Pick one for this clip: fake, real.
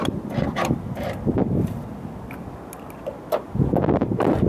real